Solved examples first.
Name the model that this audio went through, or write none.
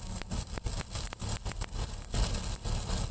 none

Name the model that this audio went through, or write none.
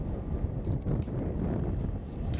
none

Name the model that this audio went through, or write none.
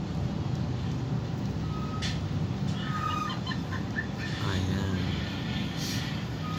none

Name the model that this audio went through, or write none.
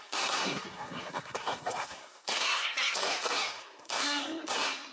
codec, SNAC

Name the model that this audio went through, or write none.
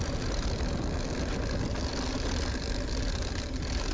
none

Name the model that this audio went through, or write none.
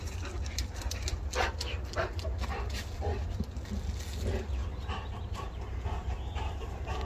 none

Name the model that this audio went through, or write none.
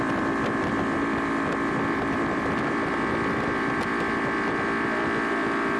vocoder, BigVGAN v2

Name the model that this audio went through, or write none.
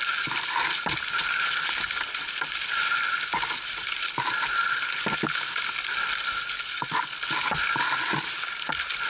none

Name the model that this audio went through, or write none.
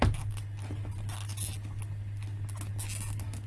none